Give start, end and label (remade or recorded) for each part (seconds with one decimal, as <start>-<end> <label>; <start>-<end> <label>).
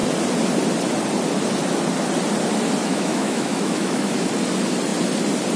0.0-2.8 recorded; 2.8-4.3 remade; 4.3-5.6 recorded